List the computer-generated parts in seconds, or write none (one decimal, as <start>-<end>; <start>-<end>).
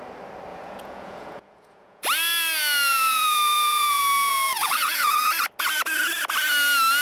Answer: 0.5-2.0; 2.9-5.2